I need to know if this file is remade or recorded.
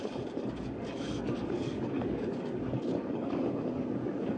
remade